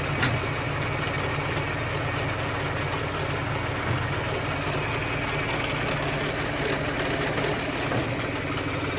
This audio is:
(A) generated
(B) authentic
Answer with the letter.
B